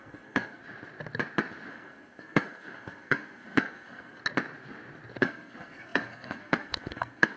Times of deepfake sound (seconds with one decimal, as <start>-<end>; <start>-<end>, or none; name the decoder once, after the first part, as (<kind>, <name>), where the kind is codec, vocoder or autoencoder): 0.0-0.6 (codec, SNAC); 1.7-4.2; 5.2-7.4